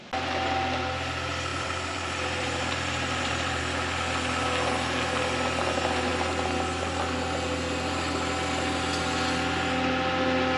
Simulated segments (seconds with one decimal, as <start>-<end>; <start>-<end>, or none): 1.5-3.6